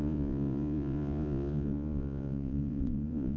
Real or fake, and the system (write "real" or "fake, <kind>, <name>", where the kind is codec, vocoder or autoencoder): fake, vocoder, Vocos